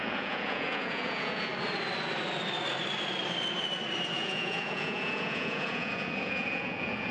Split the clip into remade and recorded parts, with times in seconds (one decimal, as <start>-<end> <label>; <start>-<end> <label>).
0.0-1.5 remade; 1.5-4.1 recorded; 4.1-7.1 remade